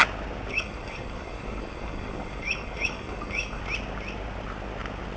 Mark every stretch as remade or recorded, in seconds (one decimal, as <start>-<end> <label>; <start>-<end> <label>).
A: 0.0-0.5 recorded; 0.5-3.6 remade; 3.6-5.2 recorded